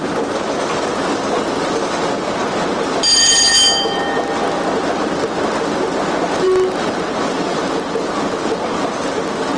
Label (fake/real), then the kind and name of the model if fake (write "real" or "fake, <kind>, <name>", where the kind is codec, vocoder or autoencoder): real